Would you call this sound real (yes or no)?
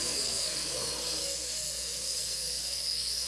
no